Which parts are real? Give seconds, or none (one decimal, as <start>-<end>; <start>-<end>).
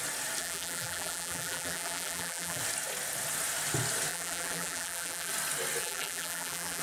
0.0-0.4; 2.6-4.1; 5.3-5.8